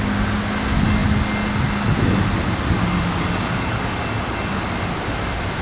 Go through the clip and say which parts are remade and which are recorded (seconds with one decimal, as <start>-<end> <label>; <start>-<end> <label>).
0.0-5.6 recorded